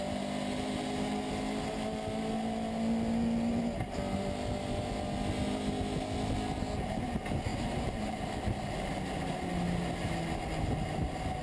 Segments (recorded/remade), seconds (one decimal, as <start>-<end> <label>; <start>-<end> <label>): 0.0-7.5 recorded; 7.5-8.2 remade; 8.2-11.4 recorded